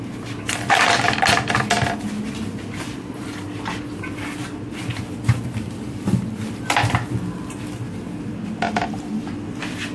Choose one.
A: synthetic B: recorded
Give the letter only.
B